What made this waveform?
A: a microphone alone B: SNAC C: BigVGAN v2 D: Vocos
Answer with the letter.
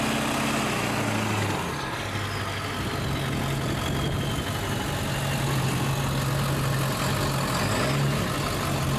A